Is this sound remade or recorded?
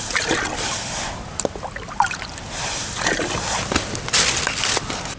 recorded